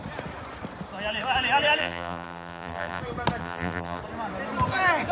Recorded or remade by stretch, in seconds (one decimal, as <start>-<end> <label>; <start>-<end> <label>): 0.0-1.8 recorded; 1.8-3.0 remade; 3.0-3.4 recorded; 3.4-4.0 remade; 4.0-5.1 recorded